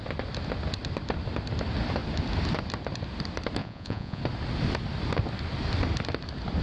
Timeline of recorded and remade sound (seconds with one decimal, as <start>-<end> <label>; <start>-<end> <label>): 0.0-3.6 recorded; 3.6-4.2 remade; 4.2-6.6 recorded